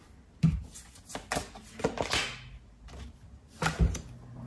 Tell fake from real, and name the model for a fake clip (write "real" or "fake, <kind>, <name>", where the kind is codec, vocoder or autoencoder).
real